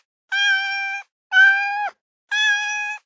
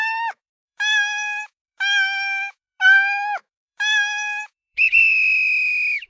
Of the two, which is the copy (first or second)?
second